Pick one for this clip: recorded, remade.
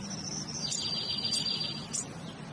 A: recorded